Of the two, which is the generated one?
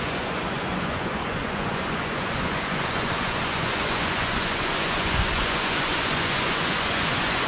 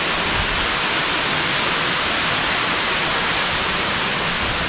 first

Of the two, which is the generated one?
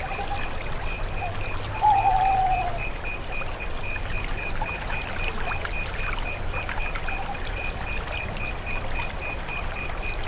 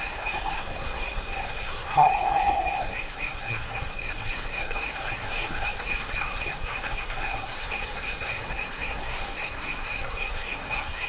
second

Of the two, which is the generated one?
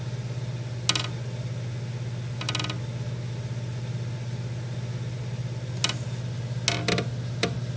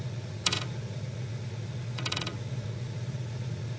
second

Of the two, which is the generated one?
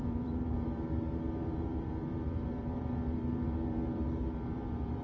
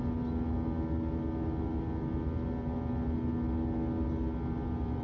first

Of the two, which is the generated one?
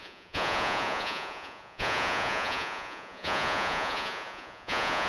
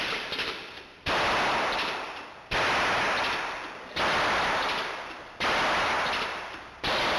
first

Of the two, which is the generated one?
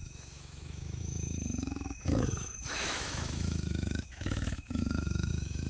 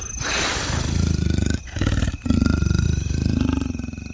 first